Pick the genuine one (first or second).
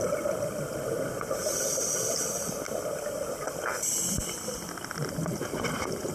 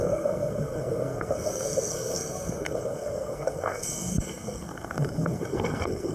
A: first